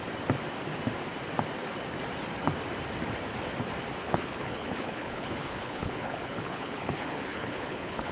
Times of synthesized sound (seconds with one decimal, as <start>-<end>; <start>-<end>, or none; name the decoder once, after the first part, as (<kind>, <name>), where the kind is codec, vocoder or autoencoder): 4.0-8.1 (codec, HILCodec)